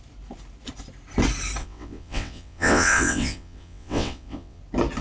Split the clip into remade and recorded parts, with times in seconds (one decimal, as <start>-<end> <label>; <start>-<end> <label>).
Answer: 0.0-1.6 recorded; 1.6-4.6 remade; 4.6-5.0 recorded